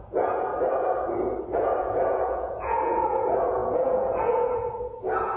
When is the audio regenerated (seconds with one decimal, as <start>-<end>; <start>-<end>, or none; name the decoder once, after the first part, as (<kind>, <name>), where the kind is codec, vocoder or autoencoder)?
0.0-0.5 (vocoder, Vocos); 1.8-5.4